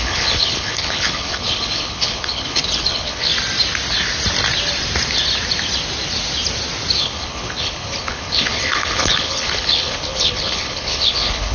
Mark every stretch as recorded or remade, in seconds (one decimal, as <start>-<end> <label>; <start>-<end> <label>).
0.0-3.3 remade; 3.3-7.0 recorded; 7.0-11.5 remade